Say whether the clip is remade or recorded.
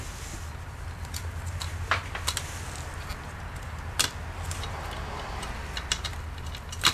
recorded